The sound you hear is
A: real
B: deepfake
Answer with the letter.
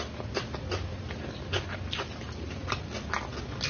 A